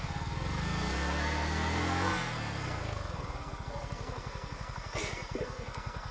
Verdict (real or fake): fake